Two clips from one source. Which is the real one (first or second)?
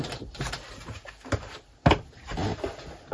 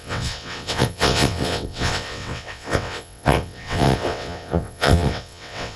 first